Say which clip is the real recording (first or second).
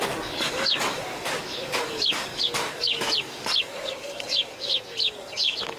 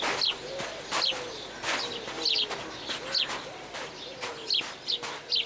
second